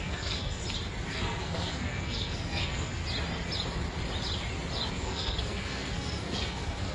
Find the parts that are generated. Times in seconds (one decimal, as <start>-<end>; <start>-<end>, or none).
0.0-0.6; 1.1-3.0; 4.9-6.9